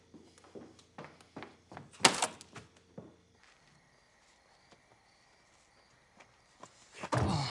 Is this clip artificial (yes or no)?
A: no